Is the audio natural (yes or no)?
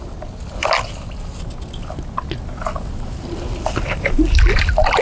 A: yes